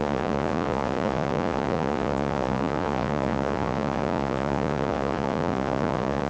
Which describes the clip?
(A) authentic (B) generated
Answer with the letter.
B